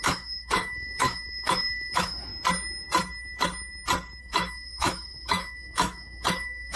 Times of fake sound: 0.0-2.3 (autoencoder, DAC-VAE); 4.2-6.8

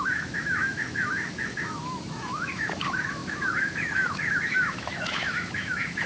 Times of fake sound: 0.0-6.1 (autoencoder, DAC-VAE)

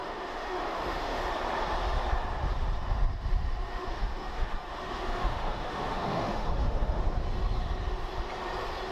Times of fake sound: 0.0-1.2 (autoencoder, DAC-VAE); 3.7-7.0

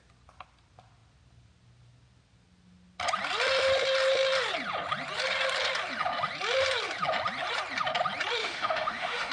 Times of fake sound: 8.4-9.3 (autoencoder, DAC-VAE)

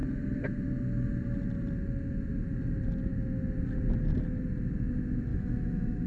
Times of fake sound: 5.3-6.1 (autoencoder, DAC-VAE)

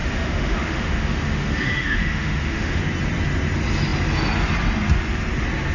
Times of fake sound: 0.0-2.8 (autoencoder, DAC-VAE)

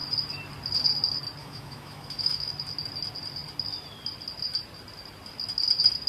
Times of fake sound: 1.4-2.5 (autoencoder, DAC-VAE)